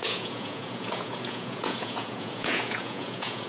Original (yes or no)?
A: no